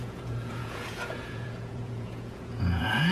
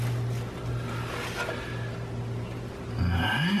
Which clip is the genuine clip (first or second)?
second